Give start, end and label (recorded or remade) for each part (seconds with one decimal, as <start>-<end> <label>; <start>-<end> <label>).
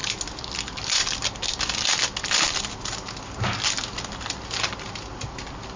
0.0-5.8 recorded